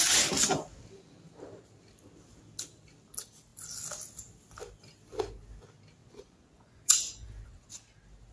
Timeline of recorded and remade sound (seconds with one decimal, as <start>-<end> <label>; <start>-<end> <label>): 0.0-6.0 recorded; 6.0-7.7 remade; 7.7-8.3 recorded